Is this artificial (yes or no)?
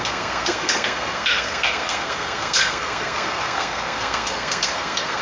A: yes